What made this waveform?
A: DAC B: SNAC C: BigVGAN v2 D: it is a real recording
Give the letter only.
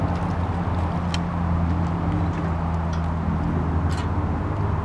D